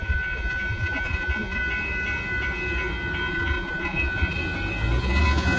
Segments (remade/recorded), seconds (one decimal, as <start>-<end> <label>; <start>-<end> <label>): 0.0-1.6 remade; 1.6-3.3 recorded; 3.3-4.4 remade; 4.4-5.0 recorded; 5.0-5.6 remade